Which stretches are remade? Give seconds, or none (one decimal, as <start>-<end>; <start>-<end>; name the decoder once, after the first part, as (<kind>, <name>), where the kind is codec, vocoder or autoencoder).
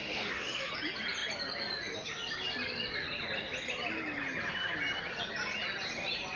0.0-0.7 (autoencoder, DAC-VAE)